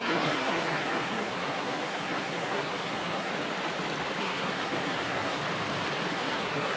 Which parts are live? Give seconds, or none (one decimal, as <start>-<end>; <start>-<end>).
3.3-4.2; 5.4-6.1